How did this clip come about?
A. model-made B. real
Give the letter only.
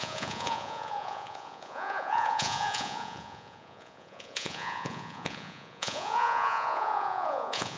A